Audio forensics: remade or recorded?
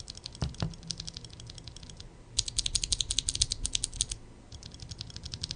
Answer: recorded